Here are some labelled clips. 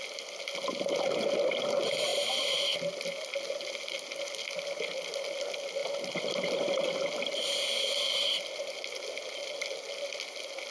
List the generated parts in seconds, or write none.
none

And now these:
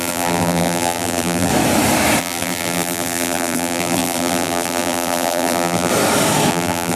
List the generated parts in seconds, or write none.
0.0-1.5 (vocoder, BigVGAN v2); 2.2-5.9; 6.5-7.0

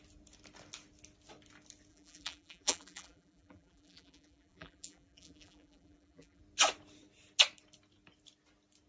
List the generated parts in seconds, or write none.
1.9-6.4 (vocoder, BigVGAN v2)

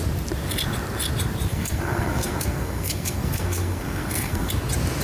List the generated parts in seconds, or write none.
1.5-4.5 (codec, SNAC)

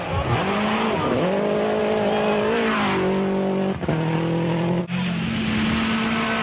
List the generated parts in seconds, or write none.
none

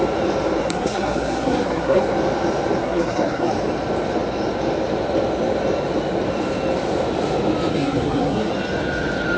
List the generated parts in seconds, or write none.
0.6-2.0 (codec, SNAC); 2.8-3.5; 7.7-8.5

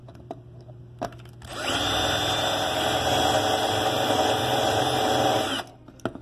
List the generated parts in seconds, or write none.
none

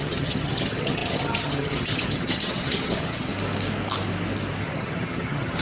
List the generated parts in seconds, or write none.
0.0-3.3 (vocoder, HiFi-GAN); 4.6-5.6